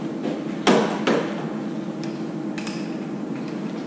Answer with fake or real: real